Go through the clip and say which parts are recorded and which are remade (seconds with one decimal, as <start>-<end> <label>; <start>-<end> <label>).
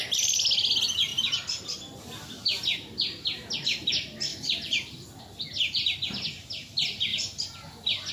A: 0.0-4.3 recorded; 4.3-5.2 remade; 5.2-7.1 recorded; 7.1-8.1 remade